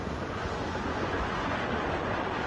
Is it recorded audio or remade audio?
remade